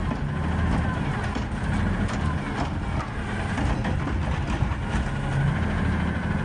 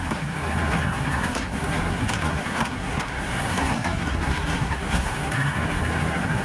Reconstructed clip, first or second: second